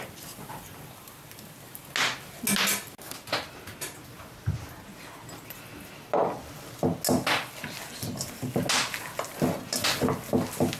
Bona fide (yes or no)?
yes